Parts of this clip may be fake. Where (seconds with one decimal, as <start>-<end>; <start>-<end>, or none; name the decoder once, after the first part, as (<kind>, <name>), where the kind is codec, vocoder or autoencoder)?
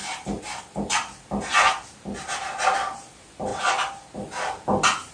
none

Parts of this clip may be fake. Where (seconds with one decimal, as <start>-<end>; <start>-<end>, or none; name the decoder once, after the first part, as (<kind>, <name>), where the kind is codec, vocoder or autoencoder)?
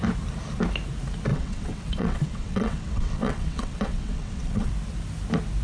1.3-4.7 (vocoder, WaveNeXt)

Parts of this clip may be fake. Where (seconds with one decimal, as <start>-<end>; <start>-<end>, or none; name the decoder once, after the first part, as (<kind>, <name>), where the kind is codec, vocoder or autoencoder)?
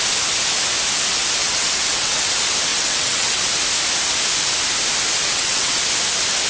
1.4-2.3 (vocoder, WaveNeXt); 2.7-3.4; 5.2-5.8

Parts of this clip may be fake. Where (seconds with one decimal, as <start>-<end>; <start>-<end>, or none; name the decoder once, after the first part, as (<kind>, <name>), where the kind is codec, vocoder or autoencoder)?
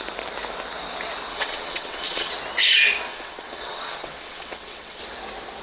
1.3-2.3 (vocoder, WaveNeXt); 3.1-5.0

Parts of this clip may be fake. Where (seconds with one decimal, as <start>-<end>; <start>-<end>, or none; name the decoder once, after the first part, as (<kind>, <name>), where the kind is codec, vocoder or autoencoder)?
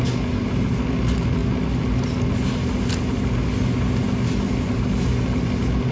none